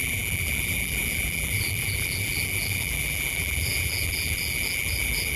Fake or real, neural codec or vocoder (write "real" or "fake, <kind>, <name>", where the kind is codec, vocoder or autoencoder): fake, vocoder, BigVGAN v2